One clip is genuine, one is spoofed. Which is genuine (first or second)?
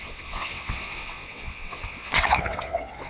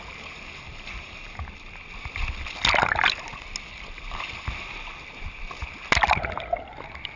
second